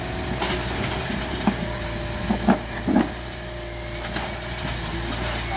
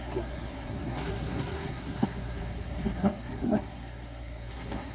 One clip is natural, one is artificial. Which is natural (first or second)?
first